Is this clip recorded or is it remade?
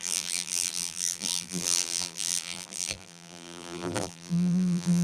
remade